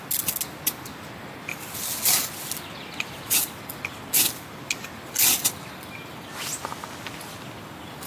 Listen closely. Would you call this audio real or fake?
real